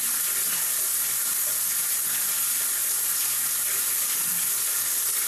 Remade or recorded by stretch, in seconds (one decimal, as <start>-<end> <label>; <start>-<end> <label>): 0.0-5.3 recorded